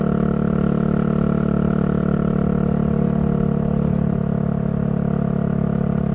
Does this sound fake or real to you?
real